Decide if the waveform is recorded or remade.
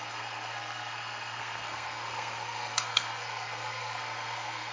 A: remade